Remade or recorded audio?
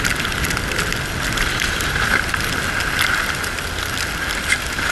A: recorded